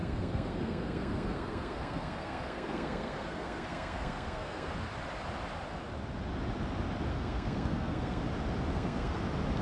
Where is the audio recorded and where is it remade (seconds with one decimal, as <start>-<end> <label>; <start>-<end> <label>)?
0.0-4.7 remade; 4.7-7.1 recorded; 7.1-8.2 remade; 8.2-8.7 recorded; 8.7-9.2 remade; 9.2-9.6 recorded